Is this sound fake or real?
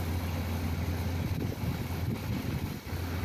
real